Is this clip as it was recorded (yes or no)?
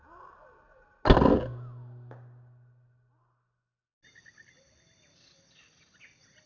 yes